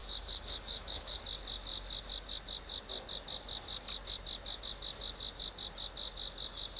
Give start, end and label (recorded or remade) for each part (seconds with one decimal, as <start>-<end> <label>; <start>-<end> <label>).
0.0-1.2 remade; 1.2-6.8 recorded